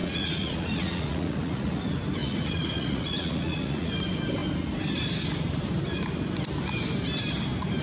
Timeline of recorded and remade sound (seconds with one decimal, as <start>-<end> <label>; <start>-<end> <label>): 0.0-1.8 remade; 1.8-2.2 recorded; 2.2-3.9 remade; 3.9-7.8 recorded